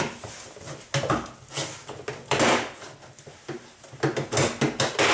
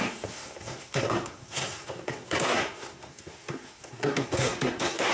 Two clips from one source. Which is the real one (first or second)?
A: first